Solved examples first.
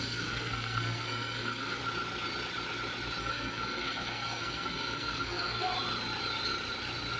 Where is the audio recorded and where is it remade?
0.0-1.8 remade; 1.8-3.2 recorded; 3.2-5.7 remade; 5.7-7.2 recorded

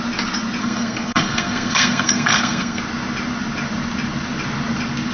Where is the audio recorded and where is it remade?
0.0-0.6 recorded; 0.6-2.8 remade; 2.8-5.1 recorded